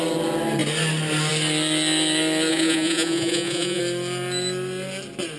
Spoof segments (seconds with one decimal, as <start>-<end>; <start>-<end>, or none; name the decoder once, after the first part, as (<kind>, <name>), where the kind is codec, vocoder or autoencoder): 2.5-3.8 (vocoder, Vocos)